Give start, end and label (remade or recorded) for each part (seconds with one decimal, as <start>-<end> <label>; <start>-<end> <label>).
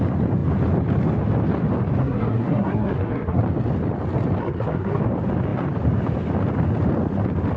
0.0-2.0 recorded; 2.0-3.4 remade; 3.4-4.4 recorded; 4.4-5.0 remade; 5.0-7.6 recorded